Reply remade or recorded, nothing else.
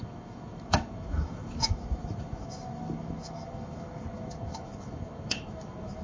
remade